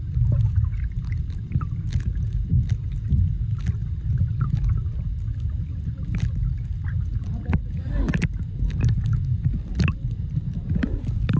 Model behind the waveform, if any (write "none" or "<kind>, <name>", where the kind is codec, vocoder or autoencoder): none